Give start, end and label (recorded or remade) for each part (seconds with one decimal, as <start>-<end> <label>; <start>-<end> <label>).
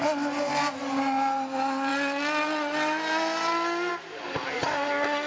0.0-5.3 recorded